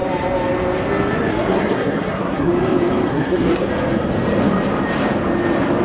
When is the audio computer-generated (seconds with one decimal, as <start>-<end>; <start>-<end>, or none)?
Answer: 1.3-2.5; 3.1-3.7